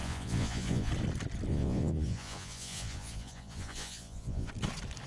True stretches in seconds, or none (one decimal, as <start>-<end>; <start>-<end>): 0.9-1.5; 4.5-5.1